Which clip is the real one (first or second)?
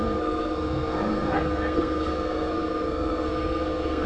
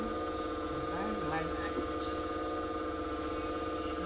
second